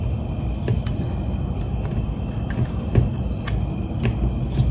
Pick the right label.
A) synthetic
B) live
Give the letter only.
B